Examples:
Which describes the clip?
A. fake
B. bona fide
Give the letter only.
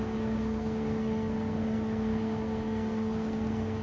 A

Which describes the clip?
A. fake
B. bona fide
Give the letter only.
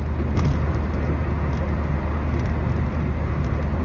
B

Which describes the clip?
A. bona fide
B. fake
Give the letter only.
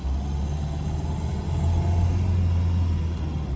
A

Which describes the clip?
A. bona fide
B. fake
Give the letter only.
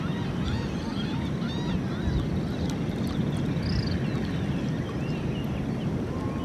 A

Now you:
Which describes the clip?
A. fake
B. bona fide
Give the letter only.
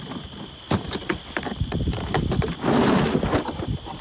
B